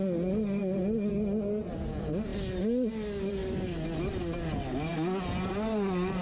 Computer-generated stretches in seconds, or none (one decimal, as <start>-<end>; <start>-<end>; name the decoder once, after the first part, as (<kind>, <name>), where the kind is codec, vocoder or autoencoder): none